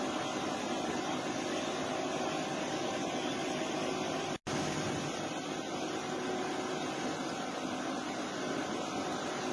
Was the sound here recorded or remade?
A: recorded